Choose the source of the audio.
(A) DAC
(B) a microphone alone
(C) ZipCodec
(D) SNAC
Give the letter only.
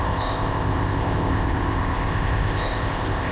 C